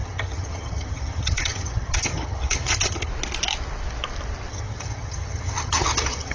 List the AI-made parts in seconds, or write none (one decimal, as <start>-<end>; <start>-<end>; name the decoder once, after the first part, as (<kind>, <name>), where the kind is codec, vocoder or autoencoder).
0.0-3.1 (vocoder, HiFi-GAN); 4.5-6.3